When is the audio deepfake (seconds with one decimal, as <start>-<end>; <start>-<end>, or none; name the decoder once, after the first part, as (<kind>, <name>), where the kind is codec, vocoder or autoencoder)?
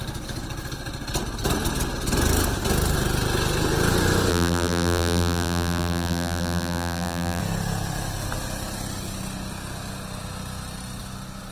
4.3-7.4 (vocoder, BigVGAN v2)